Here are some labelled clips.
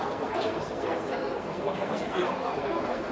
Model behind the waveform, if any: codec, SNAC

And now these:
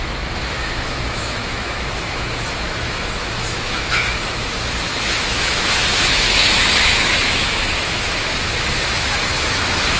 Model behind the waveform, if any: autoencoder, DAC-VAE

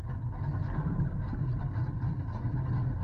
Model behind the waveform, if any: none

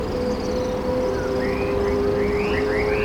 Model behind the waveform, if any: none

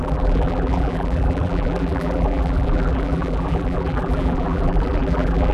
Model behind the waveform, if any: vocoder, BigVGAN v2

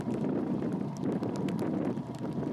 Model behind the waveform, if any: none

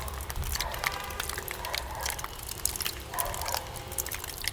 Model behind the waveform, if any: vocoder, BigVGAN v2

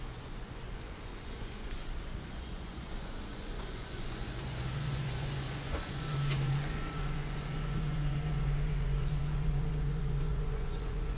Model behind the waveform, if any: vocoder, Vocos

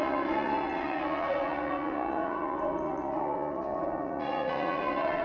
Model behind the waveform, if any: vocoder, Vocos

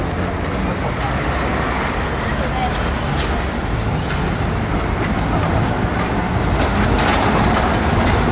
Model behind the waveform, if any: none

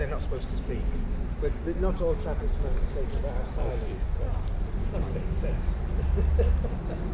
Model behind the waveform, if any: none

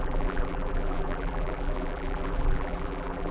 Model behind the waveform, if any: vocoder, BigVGAN v2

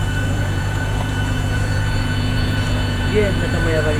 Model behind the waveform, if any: vocoder, Vocos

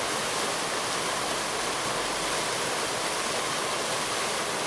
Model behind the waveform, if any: none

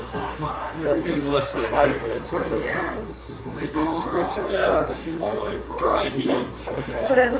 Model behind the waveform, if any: codec, SNAC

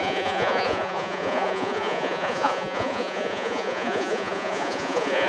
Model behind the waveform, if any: vocoder, Vocos